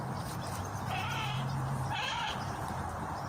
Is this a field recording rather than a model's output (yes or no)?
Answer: no